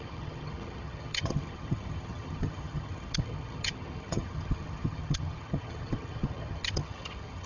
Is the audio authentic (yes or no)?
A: no